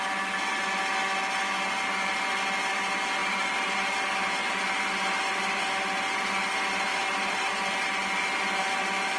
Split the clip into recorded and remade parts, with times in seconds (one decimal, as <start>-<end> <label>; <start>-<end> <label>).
0.0-3.2 recorded; 3.2-4.3 remade; 4.3-6.9 recorded; 6.9-7.5 remade; 7.5-9.2 recorded